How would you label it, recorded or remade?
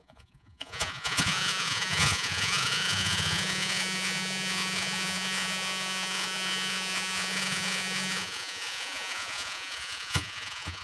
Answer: remade